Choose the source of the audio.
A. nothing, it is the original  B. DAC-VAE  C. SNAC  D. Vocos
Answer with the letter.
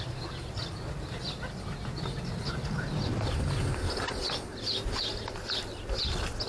A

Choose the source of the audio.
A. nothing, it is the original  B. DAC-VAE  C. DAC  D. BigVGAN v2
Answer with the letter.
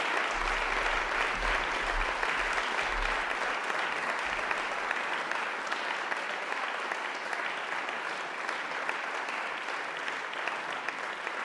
A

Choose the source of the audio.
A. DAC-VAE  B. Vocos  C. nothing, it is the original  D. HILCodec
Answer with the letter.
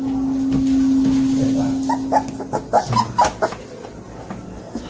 C